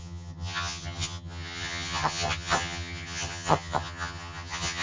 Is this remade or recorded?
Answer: remade